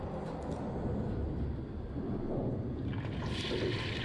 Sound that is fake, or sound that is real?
real